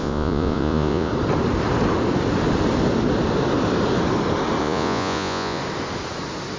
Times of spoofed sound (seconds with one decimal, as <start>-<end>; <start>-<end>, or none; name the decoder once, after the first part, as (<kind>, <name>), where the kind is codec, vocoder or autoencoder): 0.0-1.1 (vocoder, Vocos); 4.6-5.6